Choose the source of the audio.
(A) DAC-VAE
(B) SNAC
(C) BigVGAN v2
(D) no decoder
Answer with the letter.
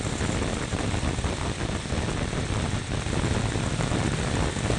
D